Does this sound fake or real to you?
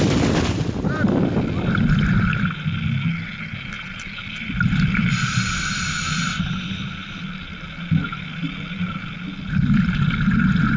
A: real